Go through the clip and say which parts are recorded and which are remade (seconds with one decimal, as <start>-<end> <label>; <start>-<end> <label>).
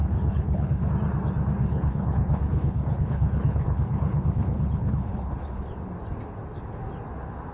0.0-0.9 remade; 0.9-1.6 recorded; 1.6-5.6 remade; 5.6-7.5 recorded